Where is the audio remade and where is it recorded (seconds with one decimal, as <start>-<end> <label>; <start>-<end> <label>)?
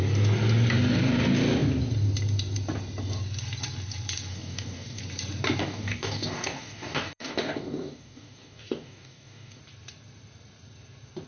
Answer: 0.0-4.3 recorded; 4.3-5.0 remade; 5.0-5.6 recorded; 5.6-9.6 remade; 9.6-11.3 recorded